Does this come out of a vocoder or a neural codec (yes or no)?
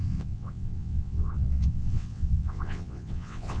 yes